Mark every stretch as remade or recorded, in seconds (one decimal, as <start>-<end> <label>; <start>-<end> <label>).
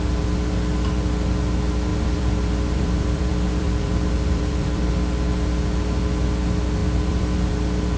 0.0-1.9 recorded; 1.9-4.9 remade; 4.9-6.8 recorded; 6.8-7.5 remade; 7.5-8.0 recorded